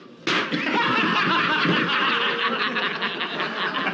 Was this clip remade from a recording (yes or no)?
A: no